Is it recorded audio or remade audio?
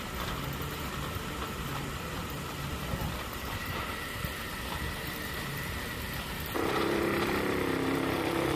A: remade